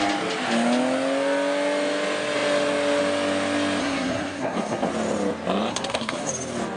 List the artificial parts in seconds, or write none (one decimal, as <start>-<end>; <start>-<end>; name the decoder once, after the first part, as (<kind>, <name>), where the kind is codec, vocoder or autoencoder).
3.8-4.9 (codec, SNAC); 5.7-6.3